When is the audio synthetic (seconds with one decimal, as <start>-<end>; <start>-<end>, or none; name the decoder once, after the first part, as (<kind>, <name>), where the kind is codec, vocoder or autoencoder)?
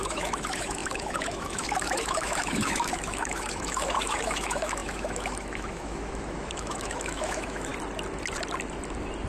0.0-7.7 (autoencoder, DAC-VAE)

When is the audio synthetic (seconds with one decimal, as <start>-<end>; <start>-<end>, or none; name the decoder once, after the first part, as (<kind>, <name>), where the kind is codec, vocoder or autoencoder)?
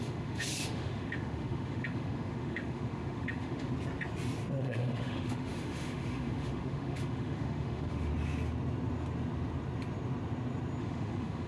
0.0-3.7 (autoencoder, DAC-VAE); 4.6-8.1; 10.8-11.5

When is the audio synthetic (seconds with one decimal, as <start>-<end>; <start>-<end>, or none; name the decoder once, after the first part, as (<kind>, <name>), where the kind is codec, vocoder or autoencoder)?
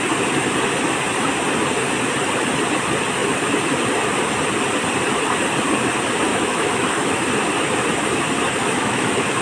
6.3-7.2 (autoencoder, DAC-VAE); 8.6-9.4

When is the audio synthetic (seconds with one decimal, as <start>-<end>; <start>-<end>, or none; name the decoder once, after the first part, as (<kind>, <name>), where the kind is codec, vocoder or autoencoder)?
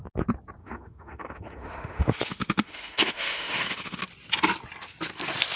0.6-4.0 (autoencoder, DAC-VAE)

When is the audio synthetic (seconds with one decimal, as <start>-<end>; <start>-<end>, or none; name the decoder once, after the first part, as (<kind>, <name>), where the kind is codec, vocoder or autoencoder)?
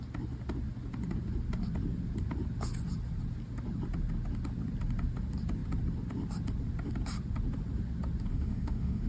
8.3-9.1 (autoencoder, DAC-VAE)